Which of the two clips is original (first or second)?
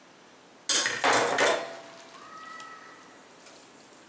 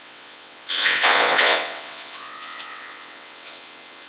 first